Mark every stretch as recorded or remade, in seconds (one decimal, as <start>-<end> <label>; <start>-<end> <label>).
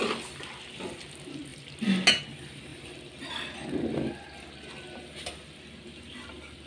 0.0-6.7 recorded